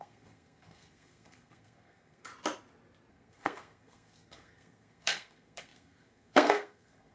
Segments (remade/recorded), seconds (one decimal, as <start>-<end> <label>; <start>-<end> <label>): 0.0-2.3 remade; 2.3-3.1 recorded; 3.1-7.1 remade

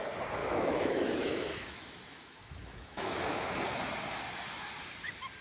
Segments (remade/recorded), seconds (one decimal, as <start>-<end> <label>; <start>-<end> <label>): 0.0-0.4 recorded; 0.4-3.6 remade; 3.6-5.4 recorded

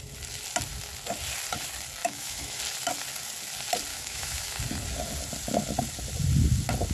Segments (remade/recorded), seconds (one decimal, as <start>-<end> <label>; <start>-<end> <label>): 0.0-2.0 recorded; 2.0-2.6 remade; 2.6-3.9 recorded; 3.9-4.6 remade; 4.6-6.9 recorded

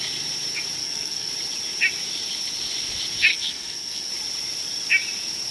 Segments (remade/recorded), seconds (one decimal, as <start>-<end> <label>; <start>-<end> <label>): 0.0-0.8 recorded; 0.8-1.3 remade; 1.3-3.3 recorded; 3.3-4.1 remade; 4.1-5.5 recorded

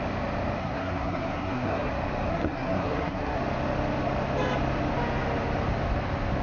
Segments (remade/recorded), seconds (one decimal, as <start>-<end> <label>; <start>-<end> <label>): 0.0-0.6 recorded; 0.6-1.9 remade; 1.9-2.3 recorded; 2.3-3.4 remade; 3.4-6.4 recorded

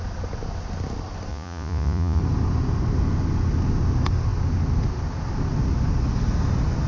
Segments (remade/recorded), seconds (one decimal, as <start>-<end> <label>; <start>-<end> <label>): 0.0-1.3 recorded; 1.3-2.2 remade; 2.2-6.9 recorded

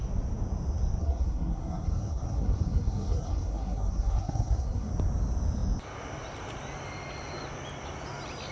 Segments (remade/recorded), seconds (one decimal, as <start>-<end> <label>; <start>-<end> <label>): 0.0-1.0 recorded; 1.0-4.9 remade; 4.9-8.5 recorded

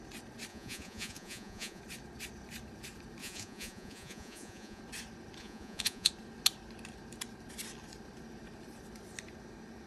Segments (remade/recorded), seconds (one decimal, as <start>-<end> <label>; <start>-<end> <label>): 0.0-0.5 recorded; 0.5-1.8 remade; 1.8-3.2 recorded; 3.2-4.8 remade; 4.8-5.4 recorded; 5.4-6.1 remade; 6.1-9.9 recorded